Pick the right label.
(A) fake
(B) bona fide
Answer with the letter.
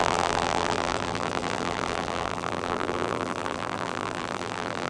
A